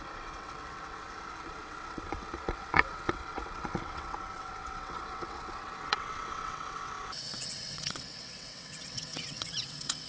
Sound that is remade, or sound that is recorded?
remade